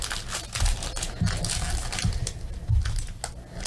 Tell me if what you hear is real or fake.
real